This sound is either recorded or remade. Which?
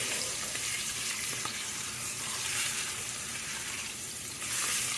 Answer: remade